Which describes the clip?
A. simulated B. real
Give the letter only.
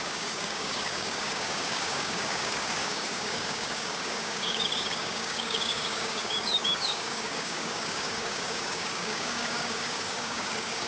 A